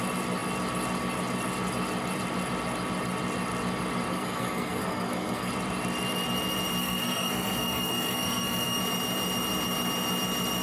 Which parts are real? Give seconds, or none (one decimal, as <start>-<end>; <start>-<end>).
0.0-4.1; 5.5-6.8; 8.8-10.6